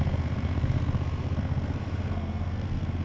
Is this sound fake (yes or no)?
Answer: yes